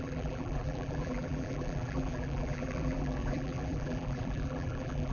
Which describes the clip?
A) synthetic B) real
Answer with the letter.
A